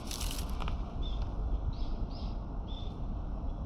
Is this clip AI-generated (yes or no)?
no